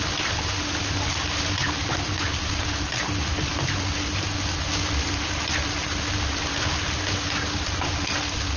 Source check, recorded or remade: recorded